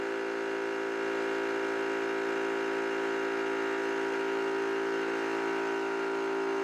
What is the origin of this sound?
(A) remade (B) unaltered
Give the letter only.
B